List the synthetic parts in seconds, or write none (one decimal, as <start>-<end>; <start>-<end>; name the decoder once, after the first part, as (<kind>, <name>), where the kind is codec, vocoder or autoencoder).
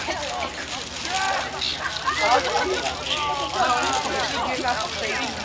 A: none